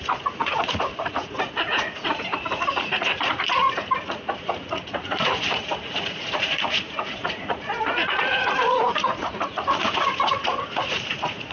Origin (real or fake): fake